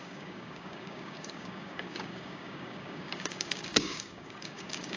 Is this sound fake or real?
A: fake